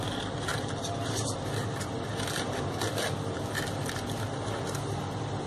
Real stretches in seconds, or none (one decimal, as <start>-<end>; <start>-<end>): 0.0-5.5